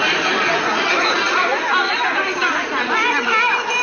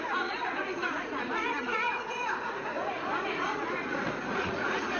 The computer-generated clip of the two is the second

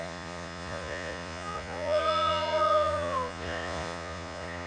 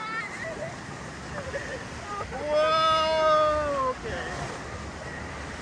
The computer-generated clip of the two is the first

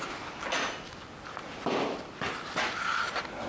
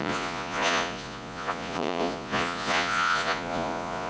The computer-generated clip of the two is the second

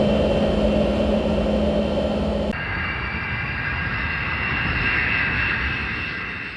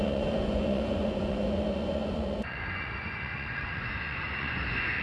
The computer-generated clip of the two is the second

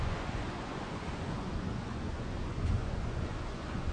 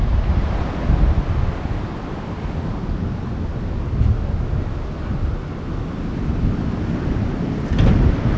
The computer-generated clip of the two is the first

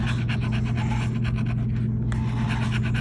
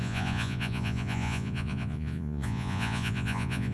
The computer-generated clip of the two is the second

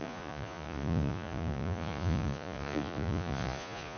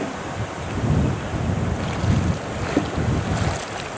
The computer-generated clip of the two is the first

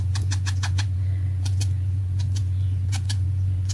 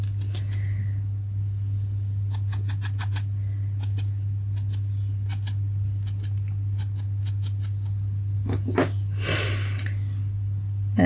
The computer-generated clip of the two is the first